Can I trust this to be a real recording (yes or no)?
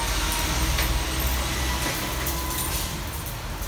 yes